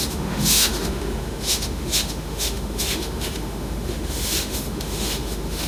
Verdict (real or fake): fake